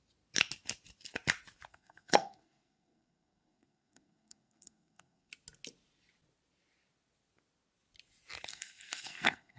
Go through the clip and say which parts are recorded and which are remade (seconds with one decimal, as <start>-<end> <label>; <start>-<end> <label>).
0.0-1.7 recorded; 1.7-5.3 remade; 5.3-8.5 recorded; 8.5-9.6 remade